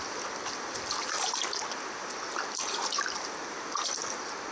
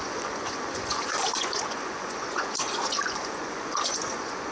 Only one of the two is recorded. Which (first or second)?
first